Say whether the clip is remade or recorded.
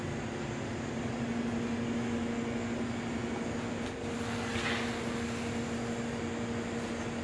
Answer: recorded